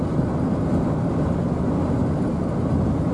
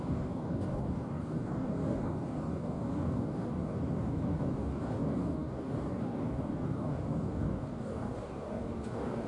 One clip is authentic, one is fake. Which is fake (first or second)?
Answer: second